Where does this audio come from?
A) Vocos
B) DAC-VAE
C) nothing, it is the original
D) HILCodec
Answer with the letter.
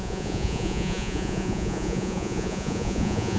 A